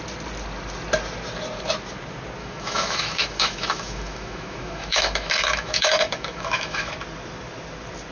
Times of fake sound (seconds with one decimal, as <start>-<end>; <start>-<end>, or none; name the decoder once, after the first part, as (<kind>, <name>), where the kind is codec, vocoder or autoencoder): 2.4-6.9 (autoencoder, DAC-VAE)